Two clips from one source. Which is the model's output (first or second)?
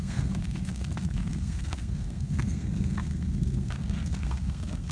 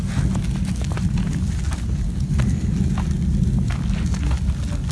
first